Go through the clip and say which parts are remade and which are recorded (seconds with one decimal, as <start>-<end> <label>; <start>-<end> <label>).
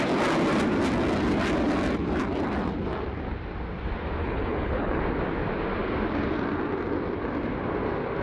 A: 0.0-4.2 recorded; 4.2-5.0 remade; 5.0-8.2 recorded